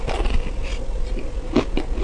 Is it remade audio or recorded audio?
recorded